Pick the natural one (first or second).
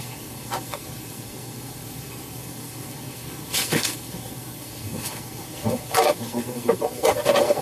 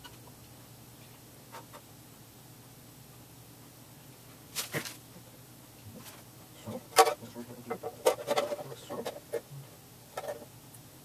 second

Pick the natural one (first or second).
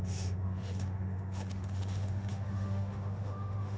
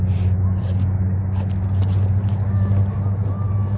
second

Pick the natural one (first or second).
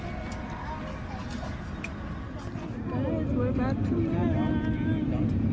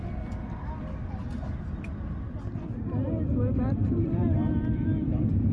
first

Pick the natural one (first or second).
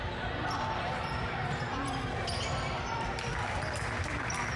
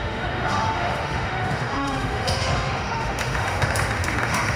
first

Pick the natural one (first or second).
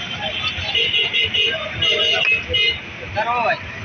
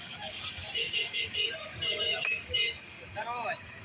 first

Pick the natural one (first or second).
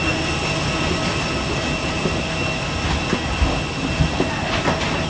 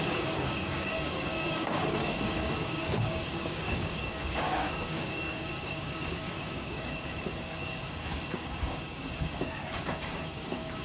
first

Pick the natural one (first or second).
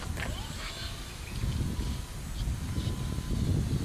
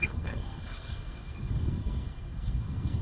first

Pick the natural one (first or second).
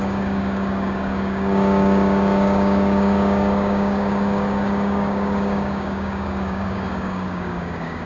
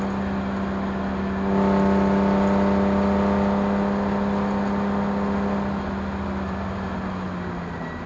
second